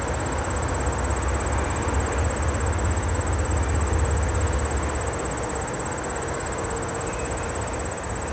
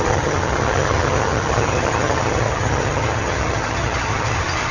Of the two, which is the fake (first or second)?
second